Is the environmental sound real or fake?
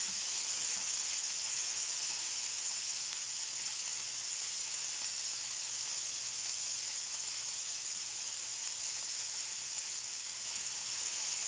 fake